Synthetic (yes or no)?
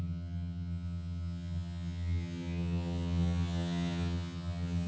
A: yes